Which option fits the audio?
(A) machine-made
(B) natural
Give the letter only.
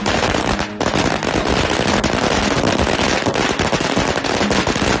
B